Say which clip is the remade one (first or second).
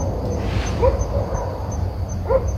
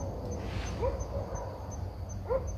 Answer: first